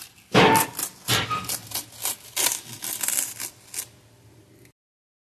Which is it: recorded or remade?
recorded